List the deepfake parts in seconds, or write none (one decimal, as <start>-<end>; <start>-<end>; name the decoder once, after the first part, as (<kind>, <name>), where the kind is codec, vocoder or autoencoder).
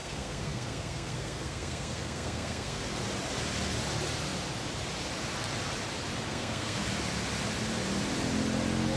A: 0.0-2.8 (codec, SNAC); 6.3-6.8